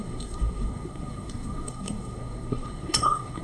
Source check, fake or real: fake